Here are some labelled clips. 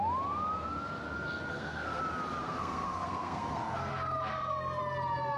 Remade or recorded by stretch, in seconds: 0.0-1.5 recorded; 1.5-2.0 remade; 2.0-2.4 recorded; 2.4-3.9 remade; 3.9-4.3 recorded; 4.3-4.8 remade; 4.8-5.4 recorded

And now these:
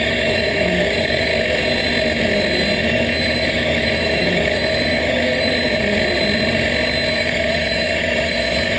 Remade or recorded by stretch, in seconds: 0.0-1.3 remade; 1.3-2.8 recorded; 2.8-5.5 remade; 5.5-7.1 recorded; 7.1-8.8 remade